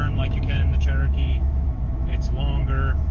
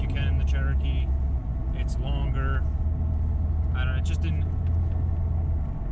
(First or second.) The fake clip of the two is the first